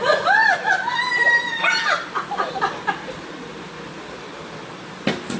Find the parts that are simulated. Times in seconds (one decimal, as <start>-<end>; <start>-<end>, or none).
0.0-0.4; 2.9-3.9